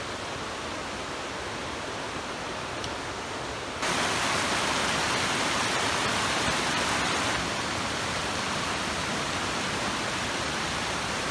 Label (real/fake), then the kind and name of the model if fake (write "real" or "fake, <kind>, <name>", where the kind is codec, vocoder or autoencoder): real